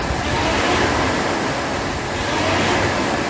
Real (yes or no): yes